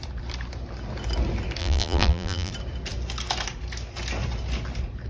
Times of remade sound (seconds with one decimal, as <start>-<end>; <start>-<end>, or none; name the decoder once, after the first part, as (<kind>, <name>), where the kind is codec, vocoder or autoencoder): 1.6-2.5 (vocoder, BigVGAN v2)